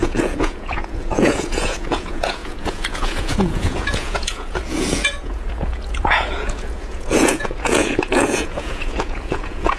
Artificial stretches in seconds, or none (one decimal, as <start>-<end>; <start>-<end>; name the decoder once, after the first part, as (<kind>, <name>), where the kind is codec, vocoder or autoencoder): 0.0-9.8 (vocoder, Vocos)